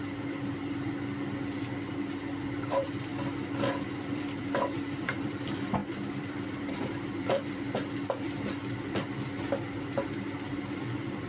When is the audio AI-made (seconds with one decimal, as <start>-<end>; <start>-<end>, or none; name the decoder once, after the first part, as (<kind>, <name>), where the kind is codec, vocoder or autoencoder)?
0.0-3.1 (vocoder, BigVGAN v2); 4.0-11.3